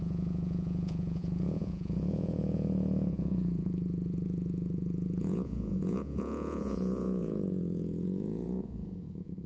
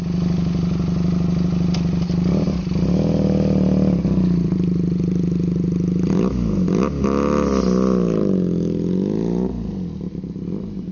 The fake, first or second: first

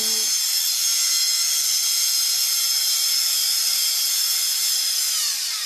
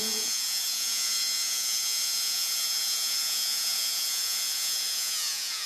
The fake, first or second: second